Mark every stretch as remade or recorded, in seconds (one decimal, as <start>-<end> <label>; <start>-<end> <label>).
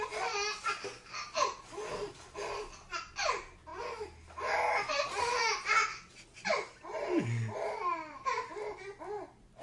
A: 0.0-9.6 recorded